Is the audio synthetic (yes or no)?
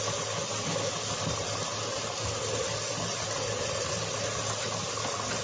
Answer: no